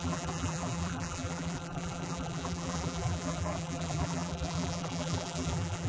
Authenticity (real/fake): fake